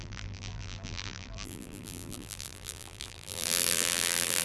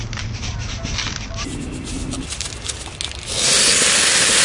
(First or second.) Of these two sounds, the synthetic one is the first